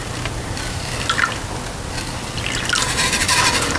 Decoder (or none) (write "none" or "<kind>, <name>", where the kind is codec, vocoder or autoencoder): none